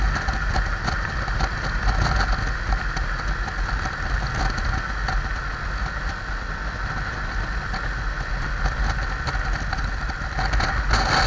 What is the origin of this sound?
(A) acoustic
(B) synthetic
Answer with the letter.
A